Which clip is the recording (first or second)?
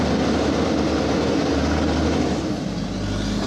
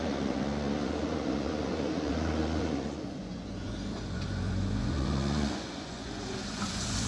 first